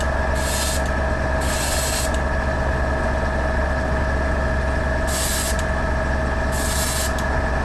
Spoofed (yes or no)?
no